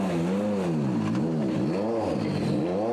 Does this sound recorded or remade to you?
recorded